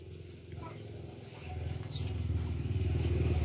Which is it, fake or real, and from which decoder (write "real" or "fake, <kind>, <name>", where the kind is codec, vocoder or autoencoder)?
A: real